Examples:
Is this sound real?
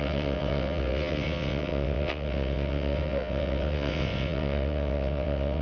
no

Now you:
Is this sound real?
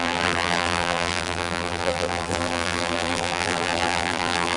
no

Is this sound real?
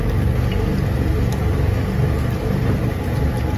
yes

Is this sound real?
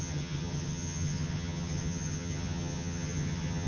no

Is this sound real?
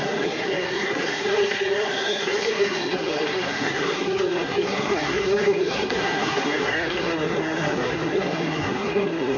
no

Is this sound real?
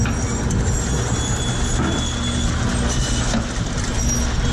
yes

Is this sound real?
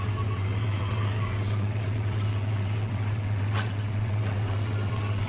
no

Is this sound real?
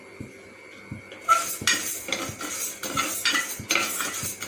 yes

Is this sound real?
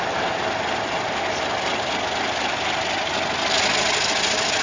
yes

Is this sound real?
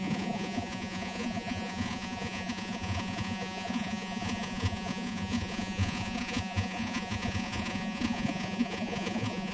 no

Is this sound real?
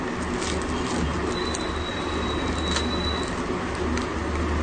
yes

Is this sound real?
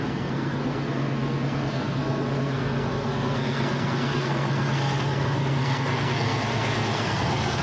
no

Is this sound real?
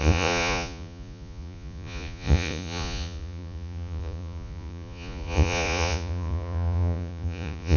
no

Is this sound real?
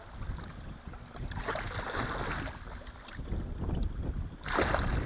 yes